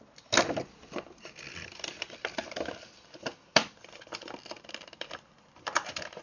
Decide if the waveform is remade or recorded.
remade